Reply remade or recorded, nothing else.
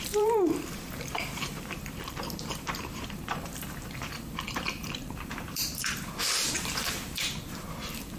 remade